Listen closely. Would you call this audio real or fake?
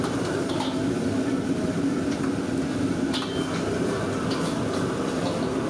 real